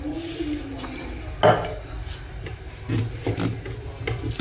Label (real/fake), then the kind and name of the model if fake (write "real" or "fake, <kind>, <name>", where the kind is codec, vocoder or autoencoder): real